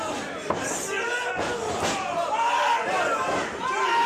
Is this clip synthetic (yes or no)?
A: no